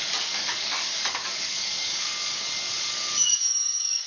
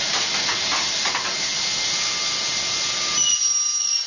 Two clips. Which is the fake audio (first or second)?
first